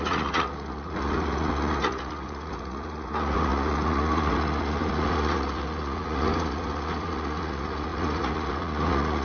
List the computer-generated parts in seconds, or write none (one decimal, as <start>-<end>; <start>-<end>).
0.0-9.2